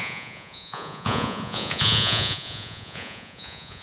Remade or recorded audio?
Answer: remade